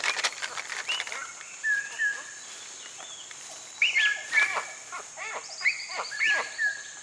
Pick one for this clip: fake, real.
fake